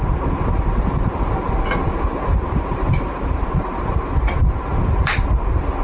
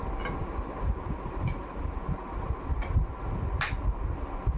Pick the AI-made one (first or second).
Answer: first